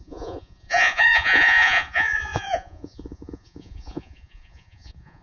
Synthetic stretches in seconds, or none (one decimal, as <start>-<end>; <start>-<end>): 0.0-5.2